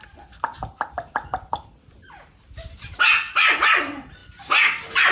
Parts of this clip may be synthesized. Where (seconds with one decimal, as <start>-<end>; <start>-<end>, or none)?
none